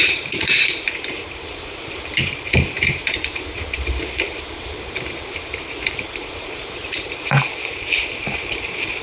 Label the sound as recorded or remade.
remade